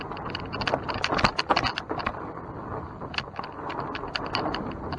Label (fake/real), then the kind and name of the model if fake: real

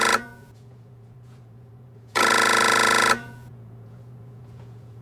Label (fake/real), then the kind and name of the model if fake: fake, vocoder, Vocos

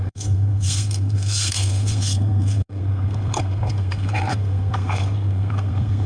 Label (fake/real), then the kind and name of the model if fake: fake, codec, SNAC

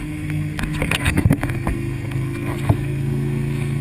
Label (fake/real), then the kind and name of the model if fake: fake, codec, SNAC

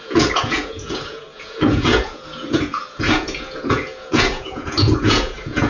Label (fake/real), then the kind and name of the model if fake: fake, vocoder, Vocos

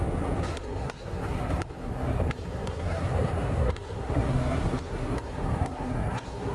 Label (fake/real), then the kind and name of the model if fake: fake, codec, SNAC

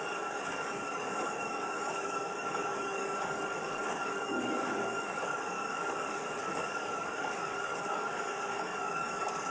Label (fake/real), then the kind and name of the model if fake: fake, codec, DAC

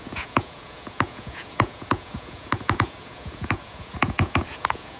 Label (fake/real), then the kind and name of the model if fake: fake, vocoder, Vocos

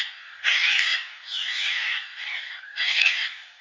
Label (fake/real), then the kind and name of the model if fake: fake, codec, DAC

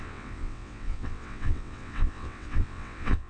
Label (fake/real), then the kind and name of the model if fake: fake, vocoder, WaveNeXt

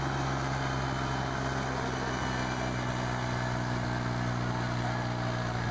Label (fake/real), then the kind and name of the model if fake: real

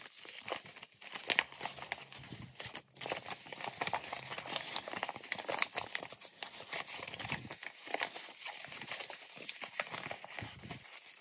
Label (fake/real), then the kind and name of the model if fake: real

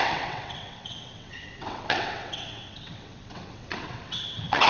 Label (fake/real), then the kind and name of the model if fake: fake, vocoder, WaveNeXt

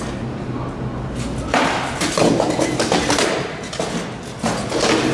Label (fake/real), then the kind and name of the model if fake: real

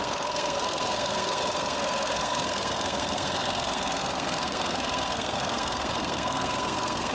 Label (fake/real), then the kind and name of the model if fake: fake, codec, SNAC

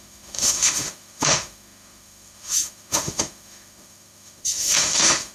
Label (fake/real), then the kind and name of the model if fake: fake, autoencoder, DAC-VAE